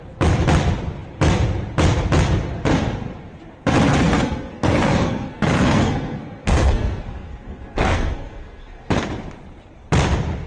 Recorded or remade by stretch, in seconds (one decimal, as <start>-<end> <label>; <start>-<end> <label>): 0.0-3.9 recorded; 3.9-8.9 remade; 8.9-10.5 recorded